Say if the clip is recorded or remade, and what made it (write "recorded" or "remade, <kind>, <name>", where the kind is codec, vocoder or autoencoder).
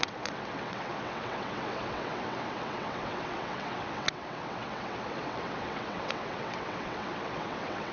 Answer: remade, vocoder, WaveNeXt